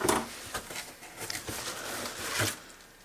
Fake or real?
real